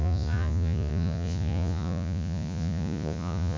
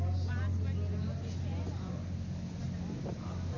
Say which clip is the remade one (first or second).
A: first